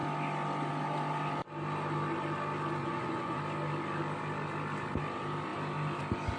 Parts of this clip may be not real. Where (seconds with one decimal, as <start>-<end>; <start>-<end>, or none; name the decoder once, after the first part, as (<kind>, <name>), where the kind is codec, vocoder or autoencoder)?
2.8-3.4 (vocoder, Vocos)